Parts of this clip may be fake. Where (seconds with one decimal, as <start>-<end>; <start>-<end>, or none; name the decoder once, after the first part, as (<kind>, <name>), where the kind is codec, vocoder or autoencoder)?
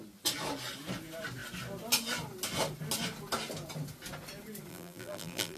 4.7-5.6 (vocoder, BigVGAN v2)